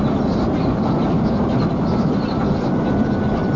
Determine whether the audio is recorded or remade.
recorded